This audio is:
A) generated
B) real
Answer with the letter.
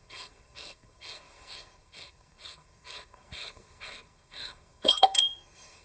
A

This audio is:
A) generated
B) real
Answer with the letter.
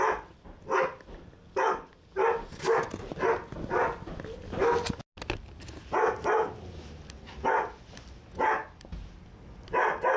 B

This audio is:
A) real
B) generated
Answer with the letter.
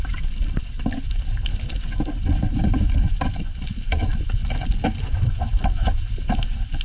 A